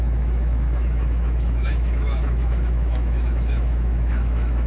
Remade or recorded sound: remade